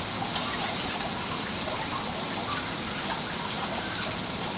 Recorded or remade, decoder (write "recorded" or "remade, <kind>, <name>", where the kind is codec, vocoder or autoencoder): recorded